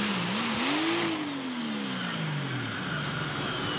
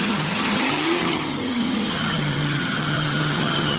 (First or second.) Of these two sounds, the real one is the first